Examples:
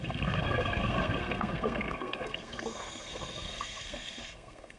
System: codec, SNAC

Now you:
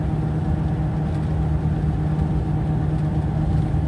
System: none